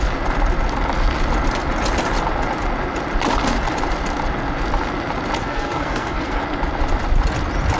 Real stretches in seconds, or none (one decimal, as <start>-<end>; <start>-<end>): 0.0-5.4; 6.4-7.8